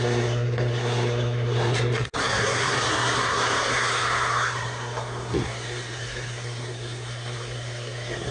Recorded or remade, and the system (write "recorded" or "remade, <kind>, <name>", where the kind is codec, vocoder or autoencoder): remade, codec, SNAC